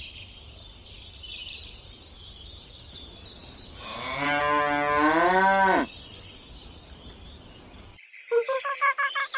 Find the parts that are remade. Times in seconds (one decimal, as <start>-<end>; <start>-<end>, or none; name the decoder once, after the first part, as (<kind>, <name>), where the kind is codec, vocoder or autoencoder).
1.4-3.0 (vocoder, BigVGAN v2); 3.4-4.4; 6.6-8.4